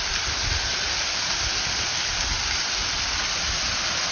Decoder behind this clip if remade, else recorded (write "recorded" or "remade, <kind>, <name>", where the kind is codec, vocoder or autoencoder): recorded